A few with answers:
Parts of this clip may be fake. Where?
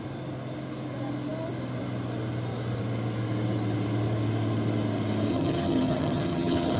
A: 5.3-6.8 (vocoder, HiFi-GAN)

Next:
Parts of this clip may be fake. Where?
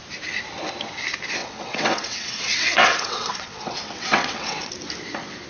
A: 1.4-4.7 (vocoder, WaveNeXt)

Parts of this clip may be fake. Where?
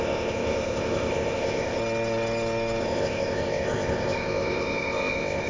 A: 0.0-1.8 (codec, ZipCodec); 2.8-5.5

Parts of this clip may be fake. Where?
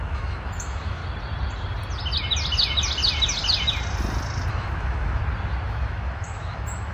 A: 0.0-1.0 (autoencoder, DAC-VAE); 4.5-5.2; 5.7-6.9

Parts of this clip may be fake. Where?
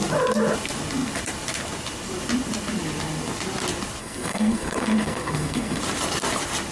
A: 4.0-5.8 (codec, SNAC)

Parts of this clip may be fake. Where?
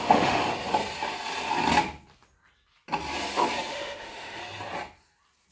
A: 0.0-0.4 (autoencoder, DAC-VAE); 3.7-4.4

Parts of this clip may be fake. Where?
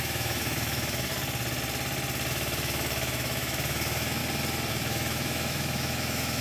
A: 0.0-1.1 (autoencoder, DAC-VAE); 2.3-4.2; 4.7-6.4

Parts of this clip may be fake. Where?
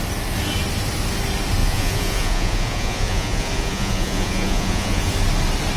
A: 1.6-5.1 (vocoder, Vocos)